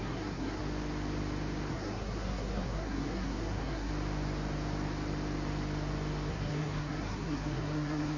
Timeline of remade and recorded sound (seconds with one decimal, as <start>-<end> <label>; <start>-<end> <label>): 0.0-0.6 remade; 0.6-1.7 recorded; 1.7-3.9 remade; 3.9-6.3 recorded; 6.3-8.2 remade